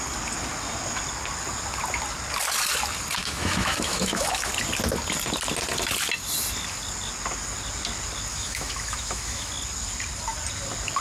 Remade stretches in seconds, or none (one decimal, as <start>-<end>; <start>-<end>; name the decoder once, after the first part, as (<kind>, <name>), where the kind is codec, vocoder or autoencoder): 3.2-4.5 (autoencoder, DAC-VAE); 8.3-9.5